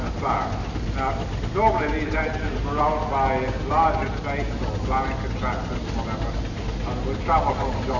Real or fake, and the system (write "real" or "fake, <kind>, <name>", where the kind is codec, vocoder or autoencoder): real